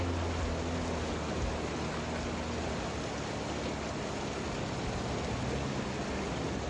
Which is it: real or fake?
real